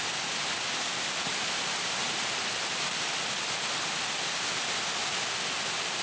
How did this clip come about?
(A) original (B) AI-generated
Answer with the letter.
A